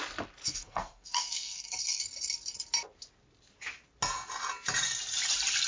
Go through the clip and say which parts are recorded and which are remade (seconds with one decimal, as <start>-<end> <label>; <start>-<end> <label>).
0.0-0.5 recorded; 0.5-2.0 remade; 2.0-5.7 recorded